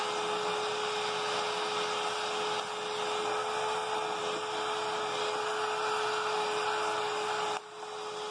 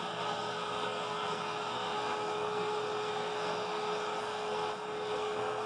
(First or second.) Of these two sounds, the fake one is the second